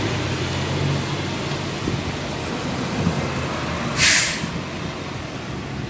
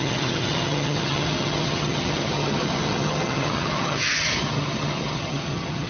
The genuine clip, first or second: first